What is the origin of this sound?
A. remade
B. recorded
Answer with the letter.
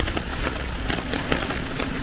A